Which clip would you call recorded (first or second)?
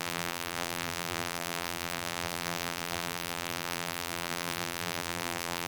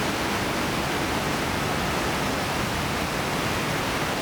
second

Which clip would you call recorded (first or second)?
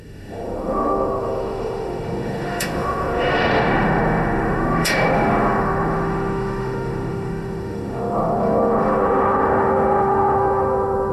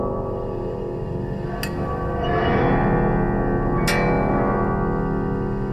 second